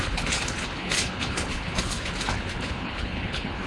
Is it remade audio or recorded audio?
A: remade